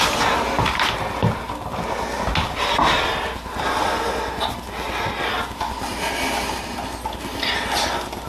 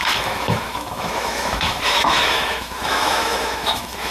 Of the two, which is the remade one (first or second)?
second